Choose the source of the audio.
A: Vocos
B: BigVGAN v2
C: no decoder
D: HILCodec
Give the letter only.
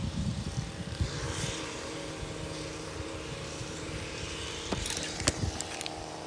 B